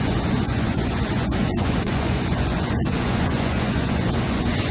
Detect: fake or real fake